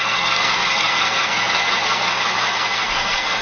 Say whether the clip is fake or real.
fake